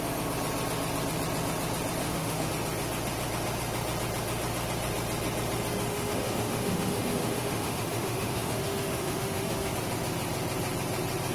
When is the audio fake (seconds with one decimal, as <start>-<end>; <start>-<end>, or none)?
2.0-2.5; 5.9-9.7